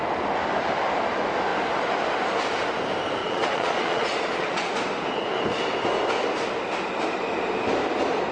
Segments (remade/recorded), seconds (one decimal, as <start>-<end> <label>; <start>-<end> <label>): 0.0-3.2 recorded; 3.2-4.7 remade; 4.7-8.3 recorded